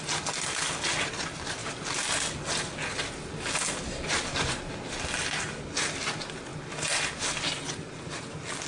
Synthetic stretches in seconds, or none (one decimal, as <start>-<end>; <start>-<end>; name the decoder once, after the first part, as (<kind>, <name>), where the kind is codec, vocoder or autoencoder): none